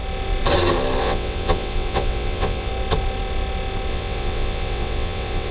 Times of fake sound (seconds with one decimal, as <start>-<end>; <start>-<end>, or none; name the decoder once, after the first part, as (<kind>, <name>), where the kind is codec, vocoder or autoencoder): 1.0-2.7 (vocoder, WaveNeXt); 3.9-5.5